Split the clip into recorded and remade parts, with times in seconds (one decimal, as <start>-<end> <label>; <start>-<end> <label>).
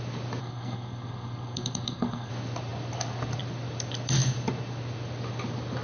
0.0-0.4 recorded; 0.4-2.3 remade; 2.3-5.8 recorded